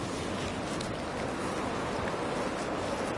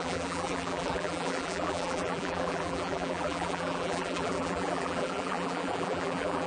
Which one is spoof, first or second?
second